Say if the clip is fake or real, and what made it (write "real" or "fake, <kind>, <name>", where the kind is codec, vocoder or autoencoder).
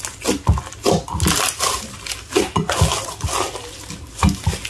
real